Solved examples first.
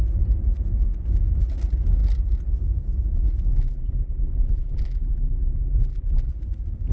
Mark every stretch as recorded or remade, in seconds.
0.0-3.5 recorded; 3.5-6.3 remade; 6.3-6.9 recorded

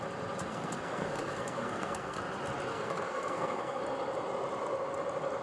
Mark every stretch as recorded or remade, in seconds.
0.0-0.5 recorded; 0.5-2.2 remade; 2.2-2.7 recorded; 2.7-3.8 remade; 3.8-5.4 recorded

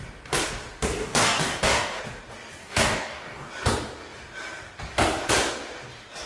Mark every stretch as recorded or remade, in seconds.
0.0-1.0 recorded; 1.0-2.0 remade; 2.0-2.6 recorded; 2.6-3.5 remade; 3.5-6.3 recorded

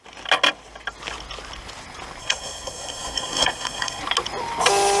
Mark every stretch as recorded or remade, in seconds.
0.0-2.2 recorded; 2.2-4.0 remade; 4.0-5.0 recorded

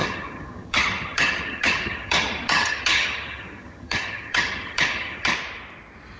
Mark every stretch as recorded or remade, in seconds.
0.0-5.3 remade; 5.3-6.2 recorded

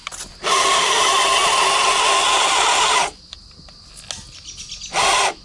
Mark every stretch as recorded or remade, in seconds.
0.0-5.4 recorded